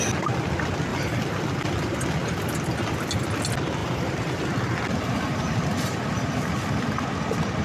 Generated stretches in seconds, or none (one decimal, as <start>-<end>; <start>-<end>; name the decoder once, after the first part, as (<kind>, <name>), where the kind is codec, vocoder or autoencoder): 0.9-3.1 (vocoder, BigVGAN v2); 3.8-7.0